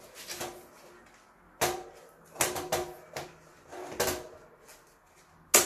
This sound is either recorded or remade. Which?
recorded